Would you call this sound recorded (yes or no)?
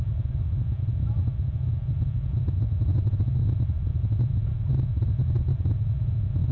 yes